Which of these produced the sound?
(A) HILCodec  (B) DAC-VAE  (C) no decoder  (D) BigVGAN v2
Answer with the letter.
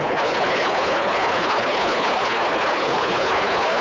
A